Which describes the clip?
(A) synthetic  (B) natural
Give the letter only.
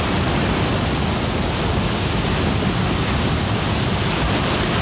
B